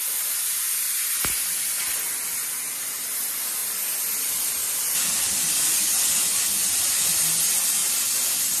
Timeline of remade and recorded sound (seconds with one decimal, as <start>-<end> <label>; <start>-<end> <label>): 0.0-8.6 recorded